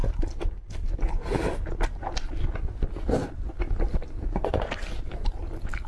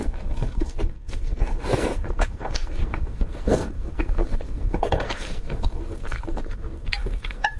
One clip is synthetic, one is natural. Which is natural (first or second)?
first